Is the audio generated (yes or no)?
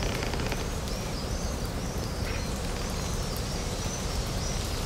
no